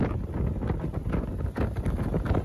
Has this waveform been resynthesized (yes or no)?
no